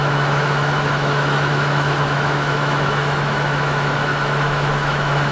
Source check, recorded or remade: remade